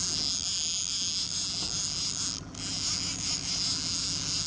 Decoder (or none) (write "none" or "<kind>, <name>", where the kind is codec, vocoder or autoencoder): none